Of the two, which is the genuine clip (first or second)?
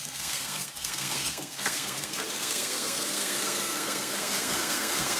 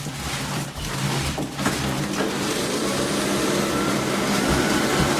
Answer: second